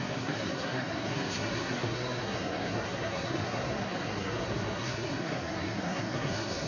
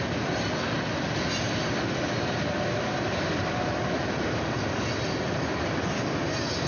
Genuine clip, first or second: second